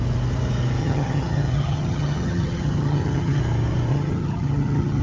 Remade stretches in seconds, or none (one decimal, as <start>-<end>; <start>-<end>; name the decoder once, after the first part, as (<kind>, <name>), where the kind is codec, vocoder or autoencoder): 0.8-3.4 (vocoder, HiFi-GAN); 3.9-5.0